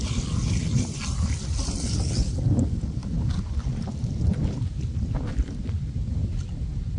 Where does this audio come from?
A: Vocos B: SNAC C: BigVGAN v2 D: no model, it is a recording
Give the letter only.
D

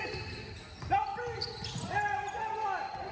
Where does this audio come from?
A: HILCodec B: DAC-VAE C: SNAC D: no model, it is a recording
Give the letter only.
D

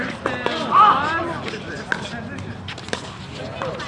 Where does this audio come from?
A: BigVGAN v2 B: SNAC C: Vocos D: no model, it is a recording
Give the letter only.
D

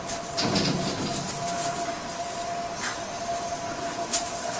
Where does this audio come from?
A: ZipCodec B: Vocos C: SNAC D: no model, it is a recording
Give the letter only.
D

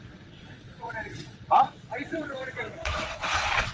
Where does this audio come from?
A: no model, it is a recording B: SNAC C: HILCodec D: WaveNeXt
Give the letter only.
D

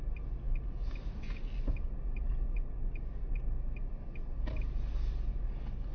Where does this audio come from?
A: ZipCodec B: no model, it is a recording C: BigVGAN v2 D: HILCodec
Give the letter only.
B